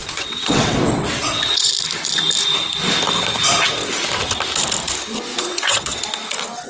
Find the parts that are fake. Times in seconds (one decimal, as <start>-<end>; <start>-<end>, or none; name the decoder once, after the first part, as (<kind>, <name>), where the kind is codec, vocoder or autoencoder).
0.0-1.7 (vocoder, WaveNeXt); 5.3-6.1